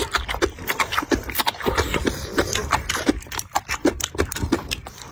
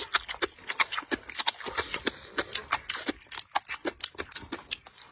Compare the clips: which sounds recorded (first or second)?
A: second